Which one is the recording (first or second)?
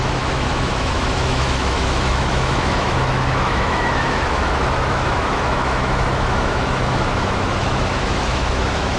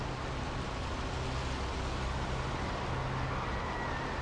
second